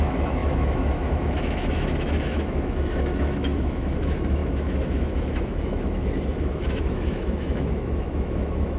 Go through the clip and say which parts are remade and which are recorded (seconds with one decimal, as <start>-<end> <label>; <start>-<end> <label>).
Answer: 0.0-8.8 remade